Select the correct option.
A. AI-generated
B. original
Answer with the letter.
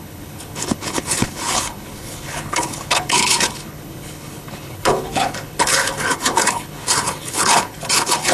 A